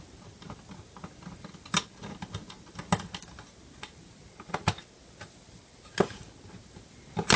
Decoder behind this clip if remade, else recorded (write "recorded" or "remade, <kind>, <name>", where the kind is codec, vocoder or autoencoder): recorded